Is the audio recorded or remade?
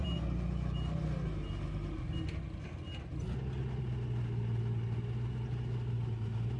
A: recorded